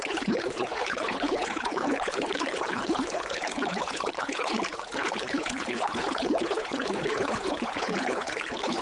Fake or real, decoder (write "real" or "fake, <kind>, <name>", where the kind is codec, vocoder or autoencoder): fake, codec, HILCodec